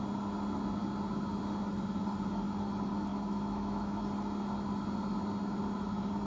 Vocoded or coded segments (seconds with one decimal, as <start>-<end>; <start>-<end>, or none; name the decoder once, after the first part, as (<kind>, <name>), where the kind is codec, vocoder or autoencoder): 3.1-4.0 (autoencoder, DAC-VAE)

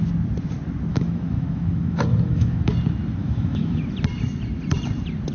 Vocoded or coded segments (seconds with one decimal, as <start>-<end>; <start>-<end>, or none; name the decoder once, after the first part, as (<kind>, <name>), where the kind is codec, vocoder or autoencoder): 0.9-2.7 (autoencoder, DAC-VAE); 3.2-3.8

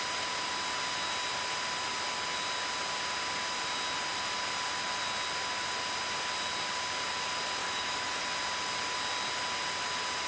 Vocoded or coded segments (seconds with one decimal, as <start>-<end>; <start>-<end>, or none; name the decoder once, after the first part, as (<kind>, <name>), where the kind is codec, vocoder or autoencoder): 7.6-8.2 (autoencoder, DAC-VAE)

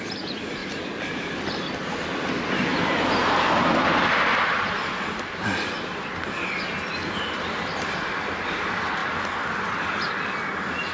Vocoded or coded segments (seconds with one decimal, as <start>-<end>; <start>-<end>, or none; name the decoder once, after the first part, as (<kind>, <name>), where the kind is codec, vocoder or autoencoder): none

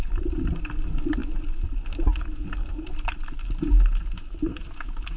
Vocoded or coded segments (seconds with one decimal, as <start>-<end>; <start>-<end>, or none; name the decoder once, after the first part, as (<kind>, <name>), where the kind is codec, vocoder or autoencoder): 4.5-5.2 (autoencoder, DAC-VAE)

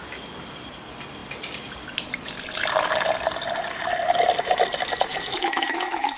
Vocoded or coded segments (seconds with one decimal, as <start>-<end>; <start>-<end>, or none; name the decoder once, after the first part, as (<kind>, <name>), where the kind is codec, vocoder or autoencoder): 5.1-6.2 (autoencoder, DAC-VAE)